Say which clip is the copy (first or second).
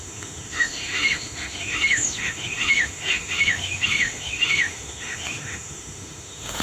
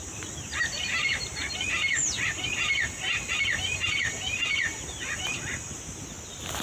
first